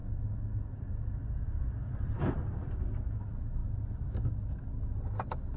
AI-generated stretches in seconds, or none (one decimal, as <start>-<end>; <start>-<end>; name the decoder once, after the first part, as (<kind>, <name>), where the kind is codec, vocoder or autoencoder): 1.9-2.6 (vocoder, BigVGAN v2)